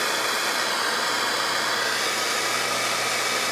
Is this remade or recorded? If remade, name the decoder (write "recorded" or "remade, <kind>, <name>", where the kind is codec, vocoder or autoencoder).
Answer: recorded